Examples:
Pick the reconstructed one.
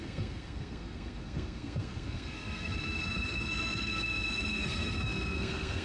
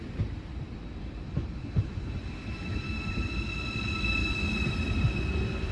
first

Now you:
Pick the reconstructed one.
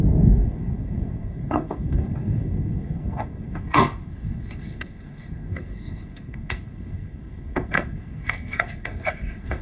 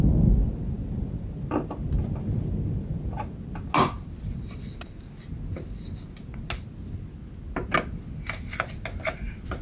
first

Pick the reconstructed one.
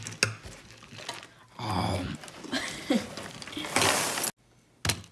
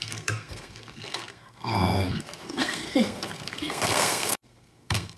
second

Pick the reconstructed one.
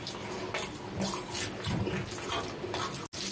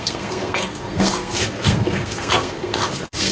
second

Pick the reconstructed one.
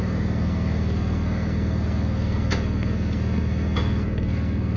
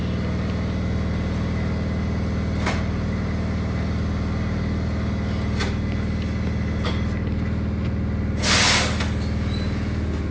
first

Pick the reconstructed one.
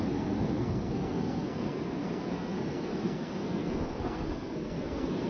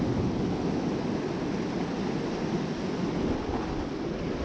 first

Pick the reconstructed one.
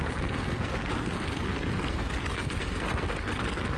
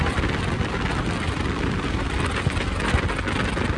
first